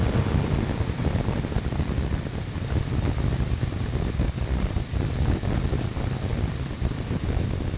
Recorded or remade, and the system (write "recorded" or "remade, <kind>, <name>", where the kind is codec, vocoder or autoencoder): remade, vocoder, BigVGAN v2